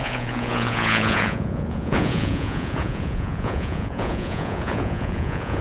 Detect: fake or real fake